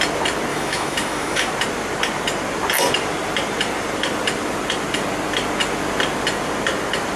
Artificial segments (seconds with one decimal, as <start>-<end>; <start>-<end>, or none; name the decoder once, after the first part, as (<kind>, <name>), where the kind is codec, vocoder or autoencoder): 0.5-1.5 (autoencoder, DAC-VAE)